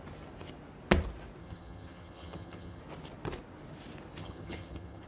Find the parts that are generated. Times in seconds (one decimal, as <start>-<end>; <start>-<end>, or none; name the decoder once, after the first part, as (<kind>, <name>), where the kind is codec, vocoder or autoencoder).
1.4-2.8 (vocoder, HiFi-GAN); 4.2-5.1